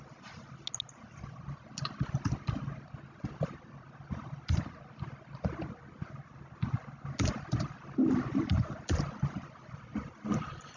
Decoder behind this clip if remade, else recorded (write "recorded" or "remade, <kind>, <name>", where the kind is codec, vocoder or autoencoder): recorded